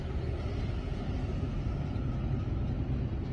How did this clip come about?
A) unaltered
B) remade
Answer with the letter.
A